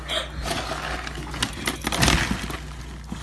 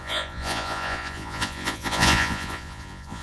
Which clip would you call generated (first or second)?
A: second